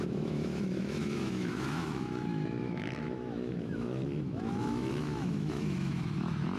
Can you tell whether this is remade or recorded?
remade